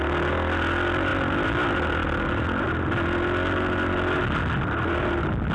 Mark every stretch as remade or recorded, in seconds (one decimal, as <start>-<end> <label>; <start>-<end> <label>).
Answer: 0.0-5.5 recorded